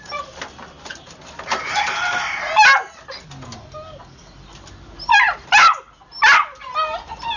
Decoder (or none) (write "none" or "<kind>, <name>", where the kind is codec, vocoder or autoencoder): none